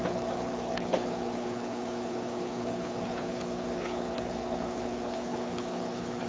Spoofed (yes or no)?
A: yes